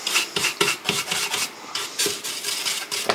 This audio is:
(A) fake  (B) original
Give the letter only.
B